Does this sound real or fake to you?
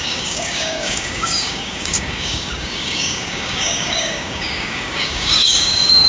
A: fake